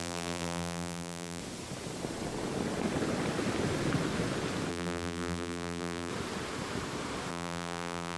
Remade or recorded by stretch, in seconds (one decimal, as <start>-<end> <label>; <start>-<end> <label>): 0.0-1.4 remade; 1.4-4.7 recorded; 4.7-6.1 remade; 6.1-7.3 recorded; 7.3-8.2 remade